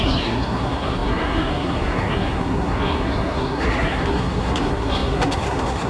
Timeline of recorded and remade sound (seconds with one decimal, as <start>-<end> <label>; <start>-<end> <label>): 0.0-5.9 remade